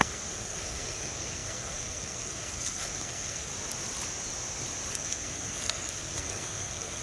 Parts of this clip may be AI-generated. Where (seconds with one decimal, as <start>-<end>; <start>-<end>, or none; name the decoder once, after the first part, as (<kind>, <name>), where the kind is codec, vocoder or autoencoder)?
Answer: 0.0-3.5 (codec, SNAC); 4.9-7.0